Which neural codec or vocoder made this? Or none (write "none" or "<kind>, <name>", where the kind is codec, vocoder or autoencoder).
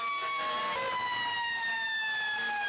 none